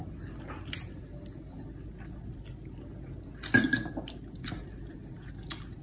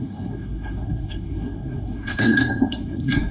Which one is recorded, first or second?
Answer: first